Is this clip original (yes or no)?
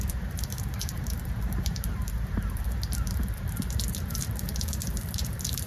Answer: no